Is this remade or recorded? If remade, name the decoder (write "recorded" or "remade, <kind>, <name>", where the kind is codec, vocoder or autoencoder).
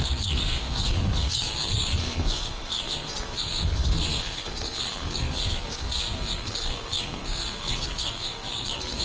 remade, codec, SNAC